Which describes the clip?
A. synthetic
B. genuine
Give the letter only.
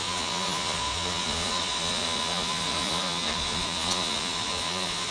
A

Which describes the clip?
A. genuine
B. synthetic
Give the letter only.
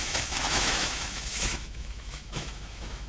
B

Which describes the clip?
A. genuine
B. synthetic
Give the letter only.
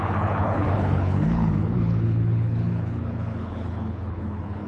B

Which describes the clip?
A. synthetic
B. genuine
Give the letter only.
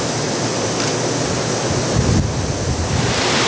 B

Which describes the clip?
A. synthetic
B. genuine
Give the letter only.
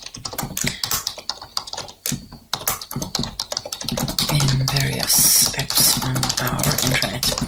B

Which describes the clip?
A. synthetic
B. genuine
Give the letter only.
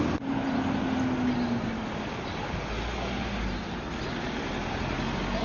B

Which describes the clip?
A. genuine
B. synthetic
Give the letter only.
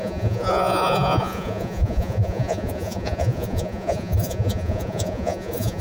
B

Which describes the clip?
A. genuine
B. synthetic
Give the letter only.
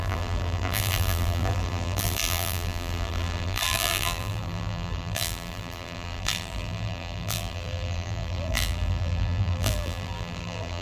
B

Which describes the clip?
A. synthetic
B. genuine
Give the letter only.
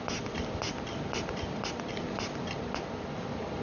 A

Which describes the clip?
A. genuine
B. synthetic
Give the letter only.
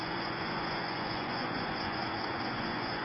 B